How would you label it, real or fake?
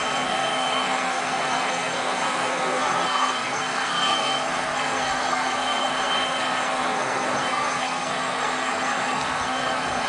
fake